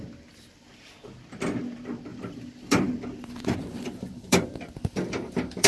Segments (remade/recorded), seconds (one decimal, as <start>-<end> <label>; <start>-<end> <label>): 0.0-2.1 recorded; 2.1-5.7 remade

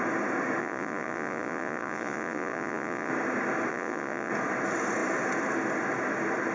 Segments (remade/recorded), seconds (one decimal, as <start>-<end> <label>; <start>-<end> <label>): 0.0-0.6 recorded; 0.6-3.1 remade; 3.1-3.7 recorded; 3.7-4.3 remade; 4.3-6.5 recorded

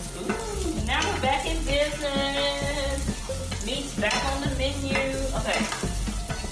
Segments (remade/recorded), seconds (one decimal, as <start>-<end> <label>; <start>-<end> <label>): 0.0-6.5 recorded

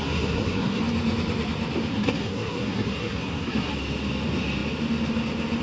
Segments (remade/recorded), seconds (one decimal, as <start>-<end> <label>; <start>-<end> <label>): 0.0-0.8 remade; 0.8-1.9 recorded; 1.9-3.7 remade; 3.7-5.6 recorded

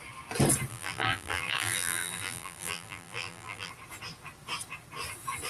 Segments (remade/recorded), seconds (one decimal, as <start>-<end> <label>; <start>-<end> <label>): 0.0-0.7 recorded; 0.7-3.7 remade; 3.7-5.5 recorded

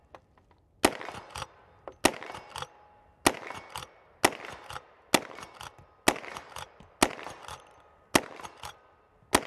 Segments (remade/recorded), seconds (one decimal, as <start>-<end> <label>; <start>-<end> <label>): 0.0-9.5 recorded